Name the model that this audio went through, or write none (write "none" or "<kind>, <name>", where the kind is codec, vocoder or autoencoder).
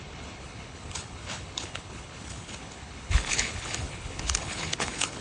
codec, HILCodec